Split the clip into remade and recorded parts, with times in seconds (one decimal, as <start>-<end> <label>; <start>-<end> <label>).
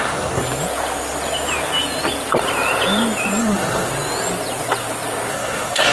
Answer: 0.0-0.4 remade; 0.4-3.4 recorded; 3.4-3.9 remade; 3.9-5.3 recorded; 5.3-5.9 remade